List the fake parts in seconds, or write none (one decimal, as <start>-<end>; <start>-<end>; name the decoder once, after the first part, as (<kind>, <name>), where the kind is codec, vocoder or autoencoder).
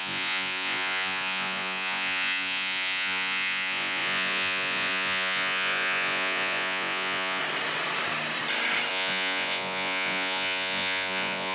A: 0.0-7.4 (vocoder, Vocos); 8.9-11.5